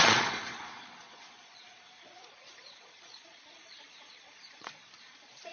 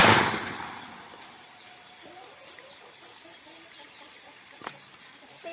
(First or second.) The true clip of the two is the second